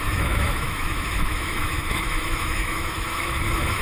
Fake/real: fake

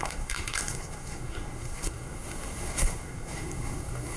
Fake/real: fake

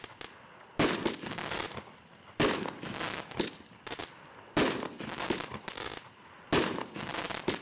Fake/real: real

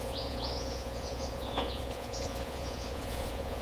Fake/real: fake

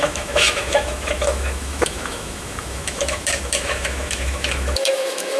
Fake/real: fake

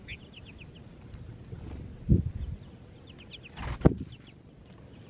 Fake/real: real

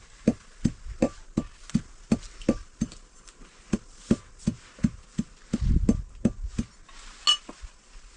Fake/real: real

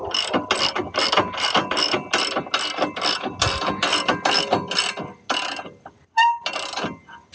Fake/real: real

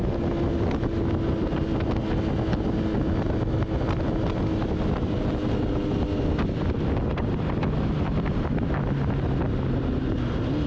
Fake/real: real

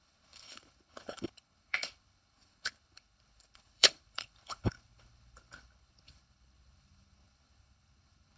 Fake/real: fake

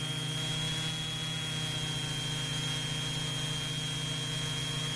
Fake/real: real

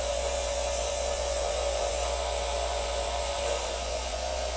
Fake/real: fake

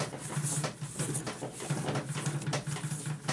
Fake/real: real